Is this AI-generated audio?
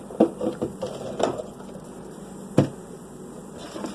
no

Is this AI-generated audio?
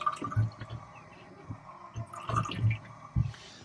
no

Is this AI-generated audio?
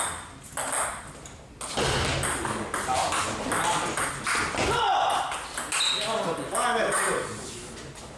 no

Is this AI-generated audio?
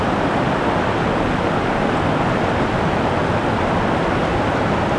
no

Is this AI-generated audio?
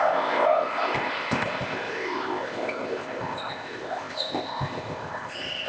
yes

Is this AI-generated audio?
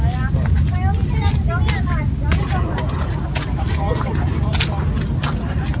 no